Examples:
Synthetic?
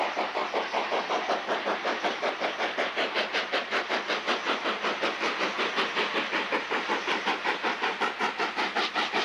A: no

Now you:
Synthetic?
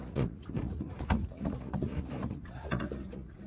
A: yes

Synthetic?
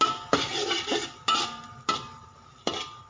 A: no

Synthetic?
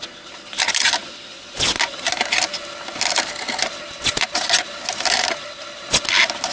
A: no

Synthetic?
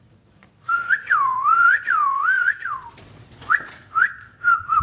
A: yes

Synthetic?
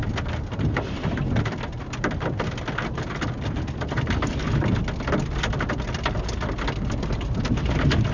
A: no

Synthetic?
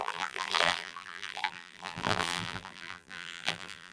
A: yes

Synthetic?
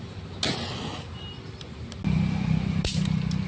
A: no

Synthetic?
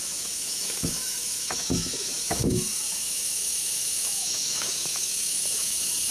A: yes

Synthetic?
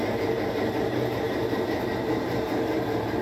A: no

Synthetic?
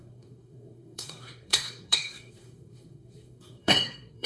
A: yes